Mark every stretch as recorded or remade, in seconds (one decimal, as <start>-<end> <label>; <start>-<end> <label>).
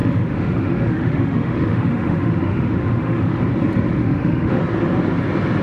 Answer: 0.0-3.4 remade; 3.4-3.9 recorded; 3.9-4.6 remade; 4.6-5.6 recorded